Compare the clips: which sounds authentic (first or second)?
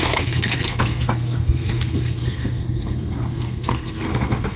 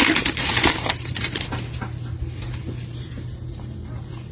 second